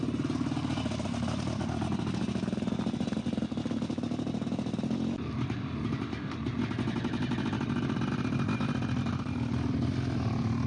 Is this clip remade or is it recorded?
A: recorded